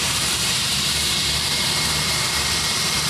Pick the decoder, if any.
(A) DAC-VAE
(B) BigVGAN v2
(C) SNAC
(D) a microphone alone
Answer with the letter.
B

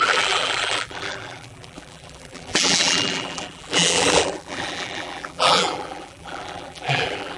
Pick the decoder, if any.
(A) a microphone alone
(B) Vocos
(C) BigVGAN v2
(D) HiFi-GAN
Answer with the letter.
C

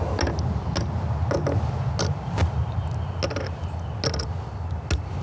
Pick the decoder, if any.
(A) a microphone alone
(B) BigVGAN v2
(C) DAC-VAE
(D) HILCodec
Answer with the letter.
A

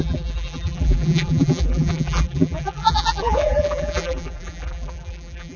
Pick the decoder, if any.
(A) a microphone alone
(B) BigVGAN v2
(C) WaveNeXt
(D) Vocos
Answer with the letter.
B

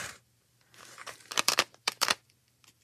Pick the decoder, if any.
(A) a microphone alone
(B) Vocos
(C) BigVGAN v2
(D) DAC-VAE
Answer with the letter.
C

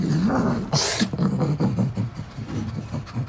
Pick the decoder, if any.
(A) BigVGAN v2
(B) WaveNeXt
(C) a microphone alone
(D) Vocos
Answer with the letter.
C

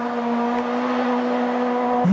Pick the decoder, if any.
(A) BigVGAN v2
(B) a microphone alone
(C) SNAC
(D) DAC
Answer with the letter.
B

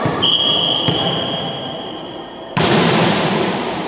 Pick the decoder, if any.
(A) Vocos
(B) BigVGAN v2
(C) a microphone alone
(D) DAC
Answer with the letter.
B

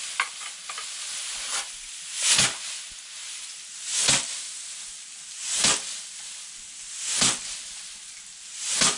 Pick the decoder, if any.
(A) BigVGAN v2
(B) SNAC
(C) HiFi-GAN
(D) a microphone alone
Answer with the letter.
D